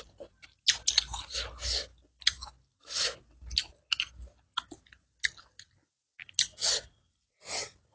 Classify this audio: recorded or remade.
recorded